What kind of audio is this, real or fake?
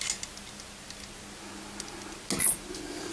real